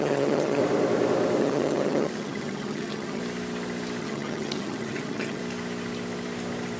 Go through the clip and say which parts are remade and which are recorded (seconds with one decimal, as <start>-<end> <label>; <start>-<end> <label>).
0.0-0.6 remade; 0.6-1.4 recorded; 1.4-3.2 remade; 3.2-4.0 recorded; 4.0-5.4 remade; 5.4-6.8 recorded